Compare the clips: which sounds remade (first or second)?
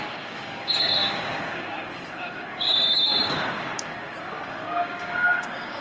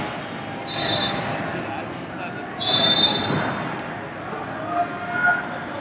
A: first